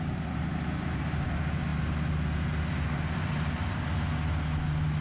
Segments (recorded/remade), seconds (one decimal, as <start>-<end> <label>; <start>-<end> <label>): 0.0-5.0 recorded